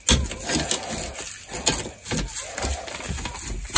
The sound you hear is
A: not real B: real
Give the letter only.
B